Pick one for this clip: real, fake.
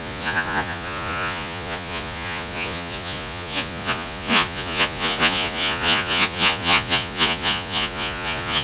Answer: fake